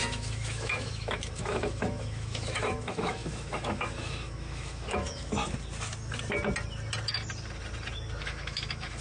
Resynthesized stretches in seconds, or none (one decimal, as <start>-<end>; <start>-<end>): 0.0-5.4; 8.2-9.0